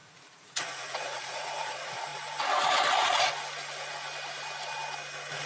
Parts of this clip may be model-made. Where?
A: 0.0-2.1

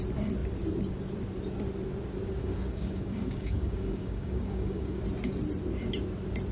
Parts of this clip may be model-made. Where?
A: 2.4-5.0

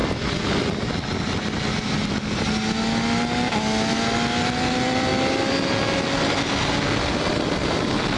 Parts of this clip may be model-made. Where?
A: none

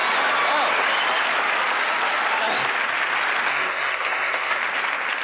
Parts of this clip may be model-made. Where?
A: 3.5-4.6

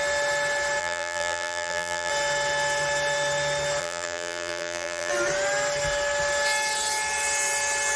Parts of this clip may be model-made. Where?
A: 0.8-2.1; 3.8-5.1

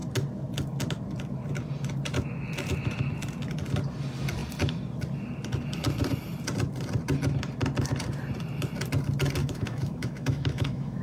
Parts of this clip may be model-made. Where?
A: 9.4-11.0